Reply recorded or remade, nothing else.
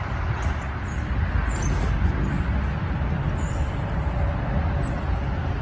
recorded